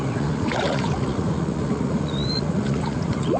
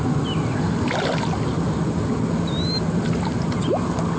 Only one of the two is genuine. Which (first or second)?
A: second